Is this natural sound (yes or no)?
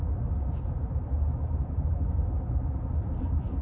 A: yes